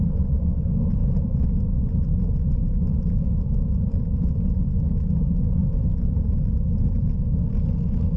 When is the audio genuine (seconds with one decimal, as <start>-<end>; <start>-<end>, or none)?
0.0-1.0; 2.5-2.9; 4.0-5.6; 7.5-8.2